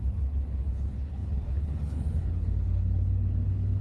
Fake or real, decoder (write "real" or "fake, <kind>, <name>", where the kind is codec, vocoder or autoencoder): fake, codec, HILCodec